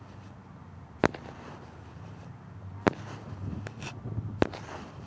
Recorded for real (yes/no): no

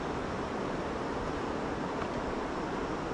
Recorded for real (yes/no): yes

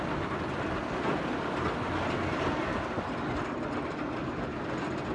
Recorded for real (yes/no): yes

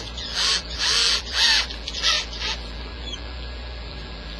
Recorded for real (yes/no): no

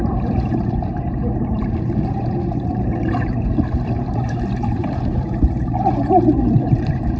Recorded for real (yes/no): no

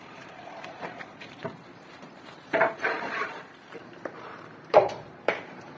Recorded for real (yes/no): no